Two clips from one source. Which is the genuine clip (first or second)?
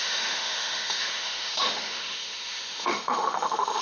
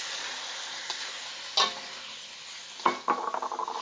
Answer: second